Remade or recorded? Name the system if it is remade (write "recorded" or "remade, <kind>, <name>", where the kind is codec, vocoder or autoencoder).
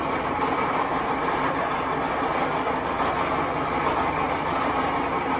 recorded